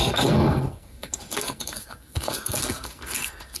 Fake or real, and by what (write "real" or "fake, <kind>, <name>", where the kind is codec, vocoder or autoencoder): fake, codec, SNAC